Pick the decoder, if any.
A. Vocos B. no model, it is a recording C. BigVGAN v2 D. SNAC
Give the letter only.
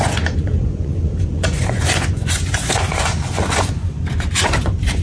A